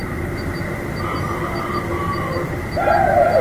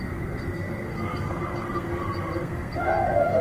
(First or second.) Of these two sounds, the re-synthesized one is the second